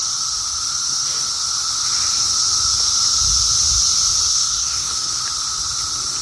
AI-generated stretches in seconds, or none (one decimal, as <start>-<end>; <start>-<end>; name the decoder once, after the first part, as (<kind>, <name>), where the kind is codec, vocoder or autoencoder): 4.3-5.1 (codec, SNAC)